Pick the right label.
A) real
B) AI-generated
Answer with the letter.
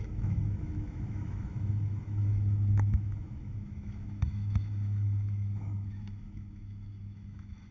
B